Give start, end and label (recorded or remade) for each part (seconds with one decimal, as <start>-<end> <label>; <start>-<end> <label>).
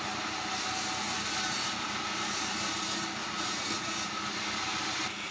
0.0-3.2 recorded; 3.2-4.1 remade; 4.1-5.3 recorded